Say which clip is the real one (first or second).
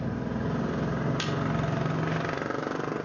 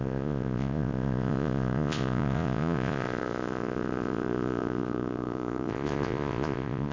first